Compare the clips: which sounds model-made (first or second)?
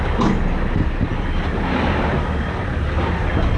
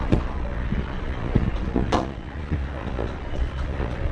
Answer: second